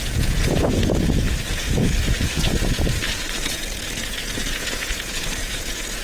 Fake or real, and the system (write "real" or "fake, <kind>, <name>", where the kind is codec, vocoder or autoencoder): fake, vocoder, Vocos